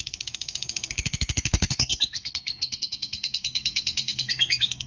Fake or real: fake